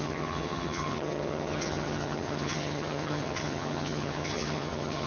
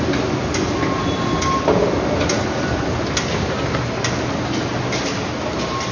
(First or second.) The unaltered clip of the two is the second